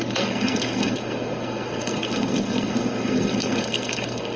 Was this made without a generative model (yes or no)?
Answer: no